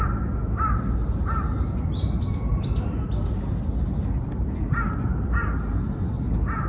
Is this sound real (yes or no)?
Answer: yes